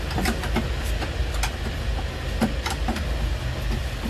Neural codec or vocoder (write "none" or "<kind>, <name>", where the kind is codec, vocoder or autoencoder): none